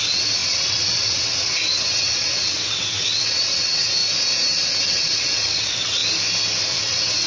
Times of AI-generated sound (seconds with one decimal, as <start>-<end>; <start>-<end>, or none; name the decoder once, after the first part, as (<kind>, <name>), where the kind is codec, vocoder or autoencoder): 0.0-4.0 (vocoder, WaveNeXt); 4.8-6.0; 6.6-7.3